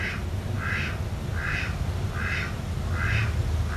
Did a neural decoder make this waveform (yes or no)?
no